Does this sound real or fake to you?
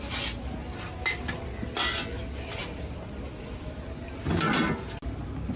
real